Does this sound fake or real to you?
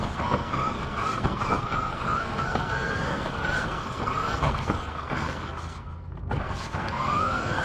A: fake